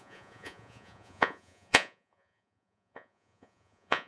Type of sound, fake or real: fake